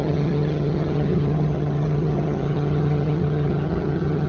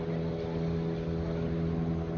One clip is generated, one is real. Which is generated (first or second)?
first